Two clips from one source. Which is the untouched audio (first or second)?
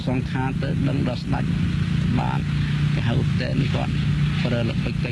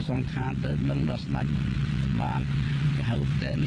first